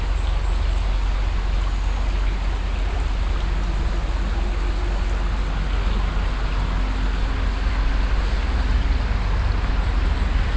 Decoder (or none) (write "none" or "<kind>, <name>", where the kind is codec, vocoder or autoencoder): none